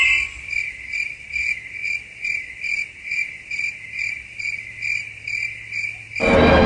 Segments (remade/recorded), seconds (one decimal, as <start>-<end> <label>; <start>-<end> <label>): 0.0-6.7 recorded